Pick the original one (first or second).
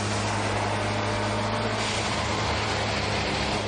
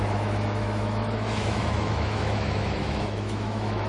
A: first